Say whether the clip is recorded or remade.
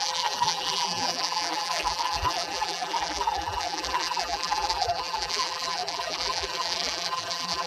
remade